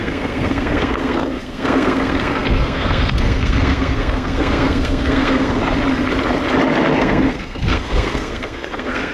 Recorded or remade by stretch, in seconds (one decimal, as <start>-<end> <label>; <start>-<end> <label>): 0.0-5.6 remade; 5.6-7.0 recorded; 7.0-9.1 remade